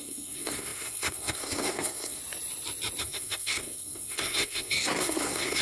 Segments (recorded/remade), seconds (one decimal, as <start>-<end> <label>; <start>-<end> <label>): 0.0-2.2 remade; 2.2-3.0 recorded; 3.0-5.6 remade